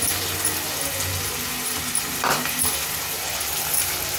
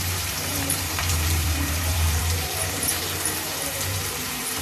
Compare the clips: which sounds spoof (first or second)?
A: second